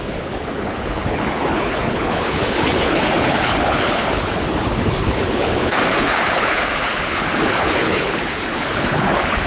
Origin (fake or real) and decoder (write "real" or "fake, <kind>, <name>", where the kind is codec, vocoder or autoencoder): fake, codec, HILCodec